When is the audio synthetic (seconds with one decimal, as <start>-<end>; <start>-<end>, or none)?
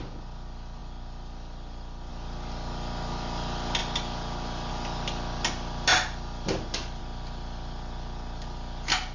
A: 0.8-2.1; 5.9-7.0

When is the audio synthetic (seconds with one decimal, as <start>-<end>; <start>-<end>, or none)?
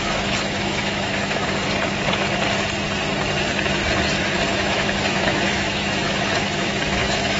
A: 0.0-1.4; 4.5-7.4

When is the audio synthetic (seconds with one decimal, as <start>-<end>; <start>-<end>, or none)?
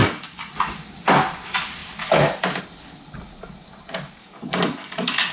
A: 0.0-0.5; 4.2-5.3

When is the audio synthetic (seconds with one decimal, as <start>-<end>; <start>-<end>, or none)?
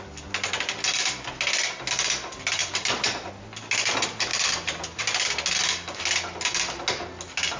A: 2.6-3.3; 4.3-5.0